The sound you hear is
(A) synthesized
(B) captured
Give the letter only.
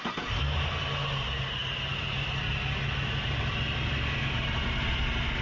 B